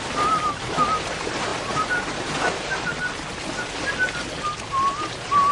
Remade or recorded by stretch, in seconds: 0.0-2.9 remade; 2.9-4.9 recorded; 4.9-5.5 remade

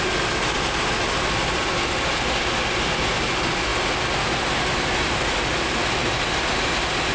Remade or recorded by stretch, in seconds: 0.0-7.1 recorded

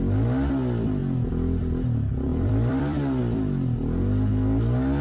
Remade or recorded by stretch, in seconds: 0.0-2.3 recorded; 2.3-3.2 remade; 3.2-5.0 recorded

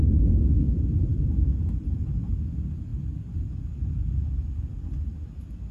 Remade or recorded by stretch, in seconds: 0.0-1.1 recorded; 1.1-1.7 remade; 1.7-5.7 recorded

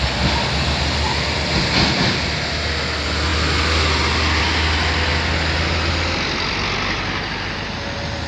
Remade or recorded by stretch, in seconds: 0.0-8.3 recorded

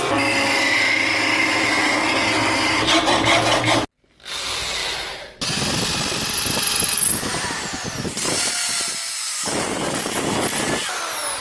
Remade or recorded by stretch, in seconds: 0.0-11.4 recorded